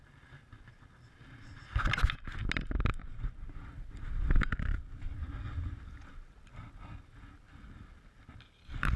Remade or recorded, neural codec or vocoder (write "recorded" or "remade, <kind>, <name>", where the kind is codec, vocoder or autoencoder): recorded